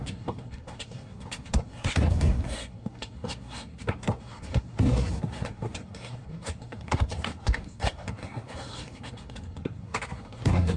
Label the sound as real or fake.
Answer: fake